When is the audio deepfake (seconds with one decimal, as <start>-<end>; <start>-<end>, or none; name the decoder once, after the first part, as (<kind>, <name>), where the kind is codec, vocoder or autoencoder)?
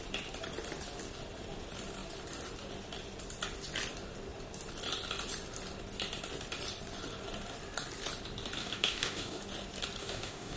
8.6-9.4 (codec, DAC); 10.0-10.6